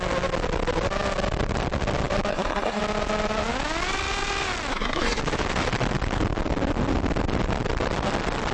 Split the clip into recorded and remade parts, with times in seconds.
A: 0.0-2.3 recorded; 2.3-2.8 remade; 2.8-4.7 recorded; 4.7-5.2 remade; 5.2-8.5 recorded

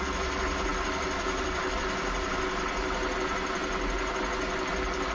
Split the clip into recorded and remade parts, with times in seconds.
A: 0.0-5.1 recorded

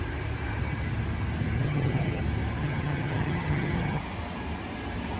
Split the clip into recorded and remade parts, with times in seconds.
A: 0.0-1.6 recorded; 1.6-2.2 remade; 2.2-2.6 recorded; 2.6-4.0 remade; 4.0-5.2 recorded

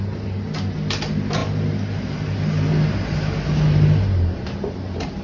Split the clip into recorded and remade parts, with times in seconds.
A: 0.0-5.2 recorded

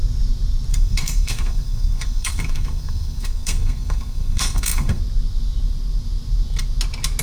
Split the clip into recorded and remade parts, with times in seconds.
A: 0.0-0.7 recorded; 0.7-5.0 remade; 5.0-7.2 recorded

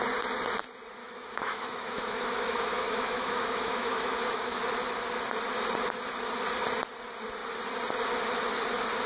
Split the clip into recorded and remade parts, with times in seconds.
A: 0.0-1.0 recorded; 1.0-4.6 remade; 4.6-9.1 recorded

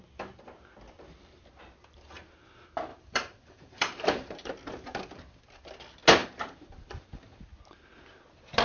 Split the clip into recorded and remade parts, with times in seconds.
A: 0.0-2.9 recorded; 2.9-4.5 remade; 4.5-6.2 recorded; 6.2-7.4 remade; 7.4-8.6 recorded